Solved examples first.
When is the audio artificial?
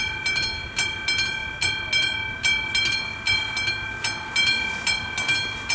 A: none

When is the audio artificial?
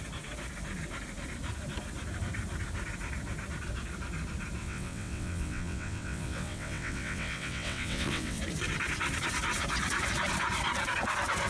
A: 4.6-8.4 (vocoder, WaveNeXt)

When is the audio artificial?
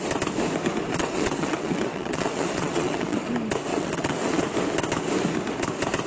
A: 0.9-3.3 (vocoder, WaveNeXt); 3.7-4.4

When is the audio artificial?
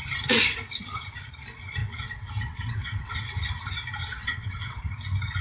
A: 1.8-3.3 (vocoder, WaveNeXt); 4.0-4.8